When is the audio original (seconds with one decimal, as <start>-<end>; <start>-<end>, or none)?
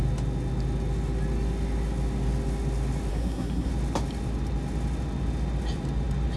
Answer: 0.0-3.1; 3.7-6.4